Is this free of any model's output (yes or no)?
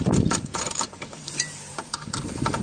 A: no